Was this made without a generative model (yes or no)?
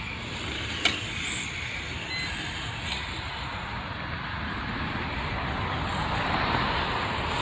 yes